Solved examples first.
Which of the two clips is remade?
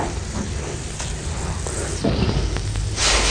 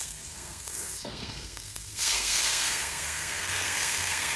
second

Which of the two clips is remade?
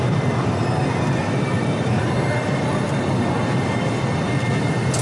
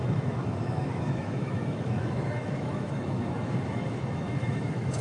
second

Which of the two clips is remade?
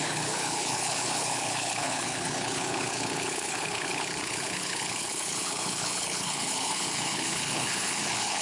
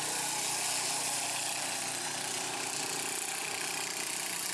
first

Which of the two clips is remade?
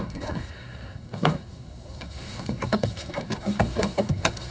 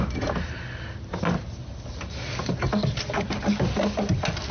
first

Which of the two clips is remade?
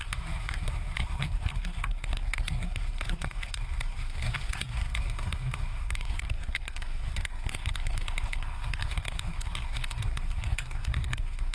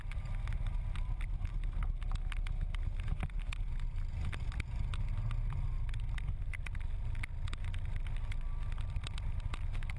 first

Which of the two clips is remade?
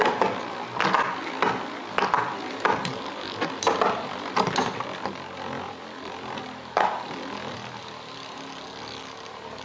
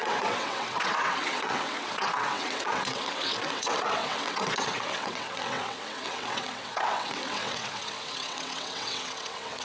second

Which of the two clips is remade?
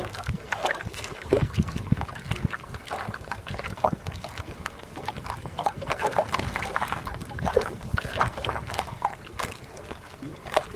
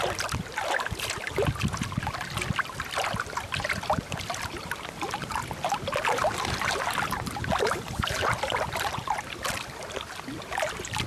first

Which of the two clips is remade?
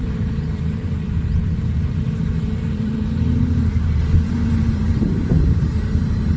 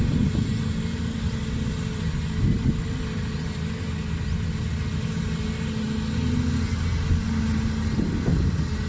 first